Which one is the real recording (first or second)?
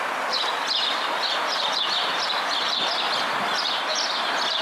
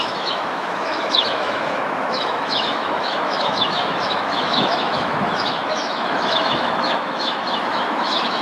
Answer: first